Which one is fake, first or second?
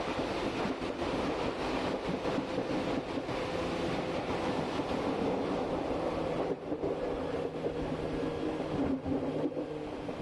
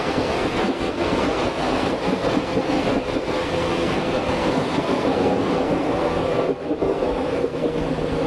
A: second